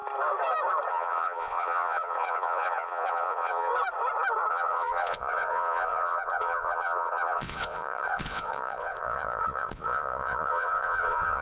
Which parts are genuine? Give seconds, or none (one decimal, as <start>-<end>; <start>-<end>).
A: 0.0-0.9; 3.7-4.5